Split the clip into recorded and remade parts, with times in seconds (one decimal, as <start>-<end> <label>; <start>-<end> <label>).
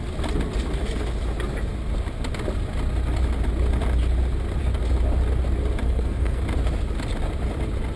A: 0.0-5.8 recorded; 5.8-6.4 remade; 6.4-8.0 recorded